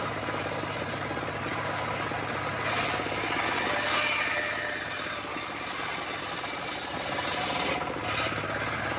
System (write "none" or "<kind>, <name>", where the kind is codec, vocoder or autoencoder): none